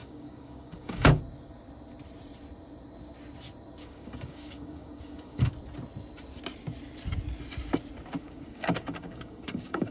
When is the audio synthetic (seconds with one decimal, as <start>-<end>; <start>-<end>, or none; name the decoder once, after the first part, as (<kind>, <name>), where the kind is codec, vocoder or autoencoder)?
0.0-1.2 (codec, DAC); 3.8-5.5; 8.1-9.9